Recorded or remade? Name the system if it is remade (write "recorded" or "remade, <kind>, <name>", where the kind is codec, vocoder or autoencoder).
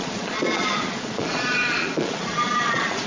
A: remade, vocoder, Vocos